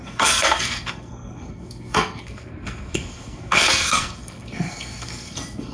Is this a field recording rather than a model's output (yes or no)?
no